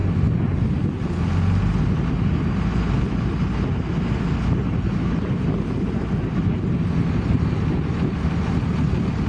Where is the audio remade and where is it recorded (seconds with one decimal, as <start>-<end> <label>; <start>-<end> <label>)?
0.0-9.3 recorded